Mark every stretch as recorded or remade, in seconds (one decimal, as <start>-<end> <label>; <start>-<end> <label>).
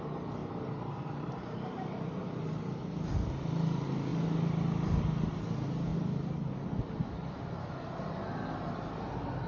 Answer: 0.0-0.4 recorded; 0.4-2.1 remade; 2.1-5.9 recorded; 5.9-6.5 remade; 6.5-9.5 recorded